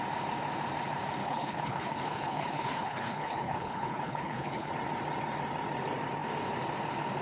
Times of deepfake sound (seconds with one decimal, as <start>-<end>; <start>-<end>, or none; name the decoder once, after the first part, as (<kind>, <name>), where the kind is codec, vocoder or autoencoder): 1.2-4.7 (codec, HILCodec)